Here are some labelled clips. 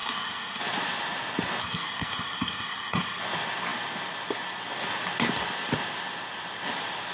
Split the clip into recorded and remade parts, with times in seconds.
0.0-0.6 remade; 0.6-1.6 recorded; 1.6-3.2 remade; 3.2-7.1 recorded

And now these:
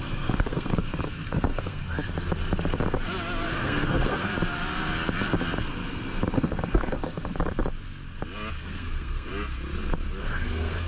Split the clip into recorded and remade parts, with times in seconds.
0.0-1.8 remade; 1.8-3.5 recorded; 3.5-4.3 remade; 4.3-6.3 recorded; 6.3-7.3 remade; 7.3-8.5 recorded; 8.5-9.3 remade; 9.3-10.2 recorded; 10.2-10.9 remade

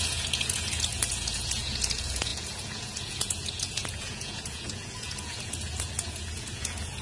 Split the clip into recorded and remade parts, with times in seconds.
0.0-7.0 remade